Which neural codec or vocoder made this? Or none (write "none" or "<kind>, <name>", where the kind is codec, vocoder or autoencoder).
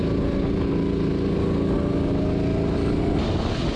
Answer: none